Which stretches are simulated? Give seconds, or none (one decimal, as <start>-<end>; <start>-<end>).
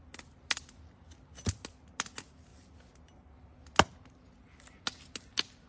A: none